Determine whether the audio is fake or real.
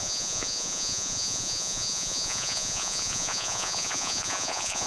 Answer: fake